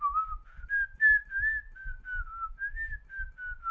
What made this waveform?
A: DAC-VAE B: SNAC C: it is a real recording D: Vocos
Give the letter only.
C